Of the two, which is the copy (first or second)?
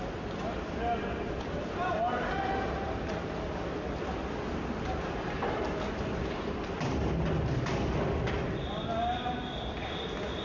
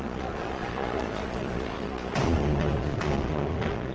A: second